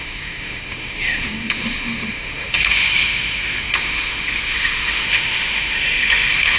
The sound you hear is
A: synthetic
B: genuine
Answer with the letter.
A